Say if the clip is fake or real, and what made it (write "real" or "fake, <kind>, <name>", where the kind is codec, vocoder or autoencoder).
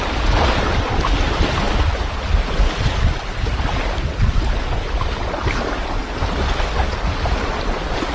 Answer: real